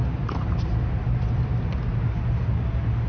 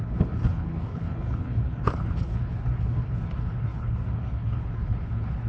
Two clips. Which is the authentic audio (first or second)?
first